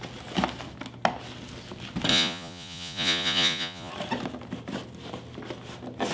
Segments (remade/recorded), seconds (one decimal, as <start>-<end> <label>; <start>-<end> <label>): 0.0-2.1 recorded; 2.1-3.9 remade; 3.9-6.1 recorded

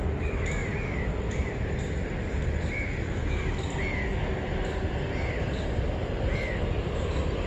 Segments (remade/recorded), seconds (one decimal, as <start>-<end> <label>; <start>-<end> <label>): 0.0-7.5 recorded

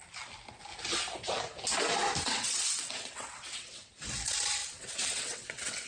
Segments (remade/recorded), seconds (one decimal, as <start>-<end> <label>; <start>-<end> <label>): 0.0-2.2 recorded; 2.2-3.9 remade; 3.9-4.6 recorded; 4.6-5.9 remade

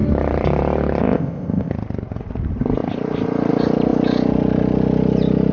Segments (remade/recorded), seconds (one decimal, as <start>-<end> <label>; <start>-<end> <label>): 0.0-1.0 recorded; 1.0-1.7 remade; 1.7-5.5 recorded

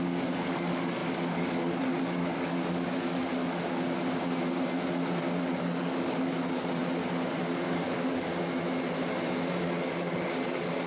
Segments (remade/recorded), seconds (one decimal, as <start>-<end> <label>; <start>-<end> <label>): 0.0-3.4 remade; 3.4-5.2 recorded; 5.2-6.8 remade; 6.8-7.4 recorded; 7.4-8.3 remade; 8.3-9.6 recorded; 9.6-10.9 remade

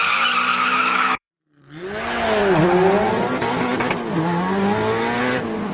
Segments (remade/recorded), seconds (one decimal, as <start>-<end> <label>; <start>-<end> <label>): 0.0-0.5 recorded; 0.5-1.3 remade; 1.3-5.7 recorded